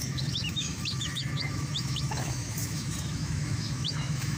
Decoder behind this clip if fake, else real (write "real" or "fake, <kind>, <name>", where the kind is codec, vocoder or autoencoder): fake, autoencoder, DAC-VAE